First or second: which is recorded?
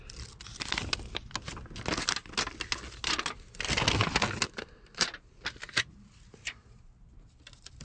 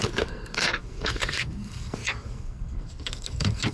first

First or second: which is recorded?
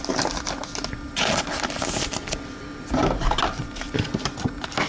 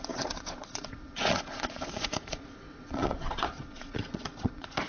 first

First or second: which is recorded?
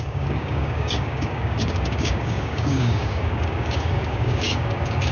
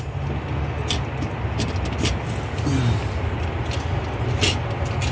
second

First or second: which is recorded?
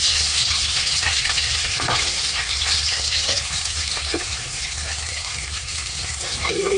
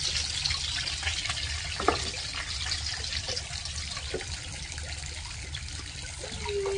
second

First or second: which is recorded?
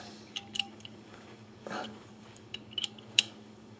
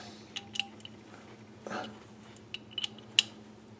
second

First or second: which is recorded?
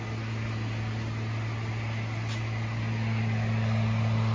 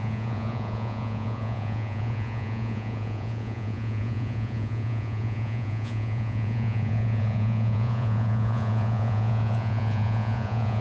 first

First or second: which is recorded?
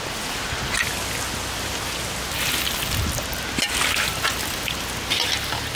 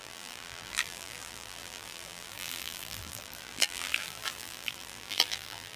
first